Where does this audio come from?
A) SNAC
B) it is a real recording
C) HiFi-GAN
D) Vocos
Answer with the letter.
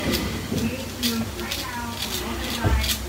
B